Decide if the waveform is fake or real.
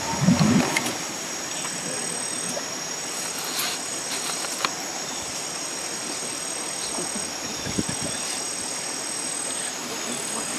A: real